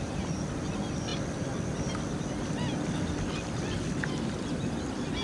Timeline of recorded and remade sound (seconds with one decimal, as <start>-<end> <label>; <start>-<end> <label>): 0.0-5.2 recorded